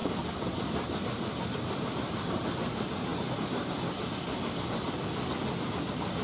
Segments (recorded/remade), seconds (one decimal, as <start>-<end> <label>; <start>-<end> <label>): 0.0-6.2 recorded